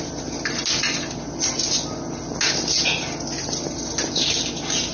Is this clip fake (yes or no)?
no